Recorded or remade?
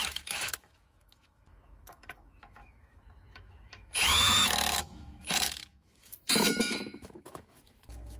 remade